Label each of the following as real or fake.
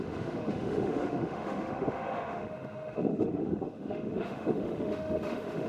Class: fake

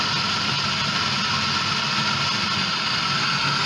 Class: real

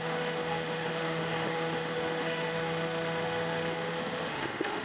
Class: fake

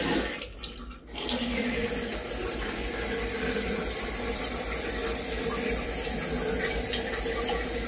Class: real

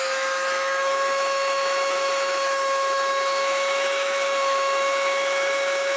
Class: fake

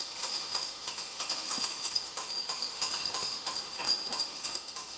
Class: fake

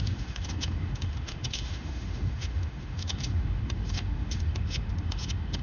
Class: fake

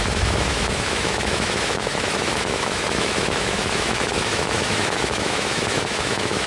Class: fake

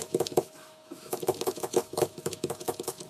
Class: fake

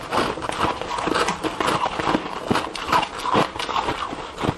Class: real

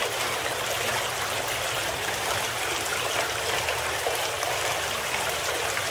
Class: real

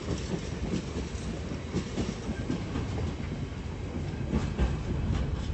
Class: real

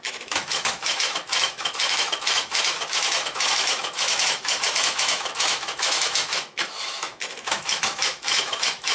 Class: fake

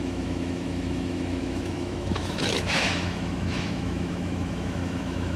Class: fake